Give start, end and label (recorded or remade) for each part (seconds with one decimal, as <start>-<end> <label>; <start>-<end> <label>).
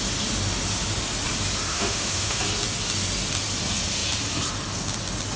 0.0-1.7 recorded; 1.7-2.4 remade; 2.4-5.4 recorded